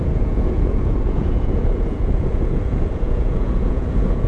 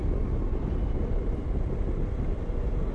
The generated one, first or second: first